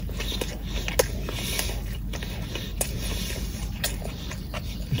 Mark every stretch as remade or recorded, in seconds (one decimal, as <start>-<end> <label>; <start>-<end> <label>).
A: 0.0-2.7 recorded; 2.7-4.0 remade; 4.0-5.0 recorded